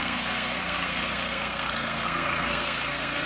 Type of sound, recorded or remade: remade